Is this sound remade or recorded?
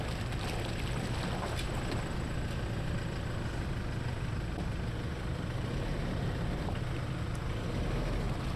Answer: recorded